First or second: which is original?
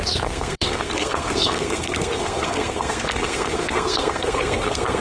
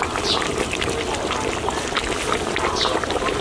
second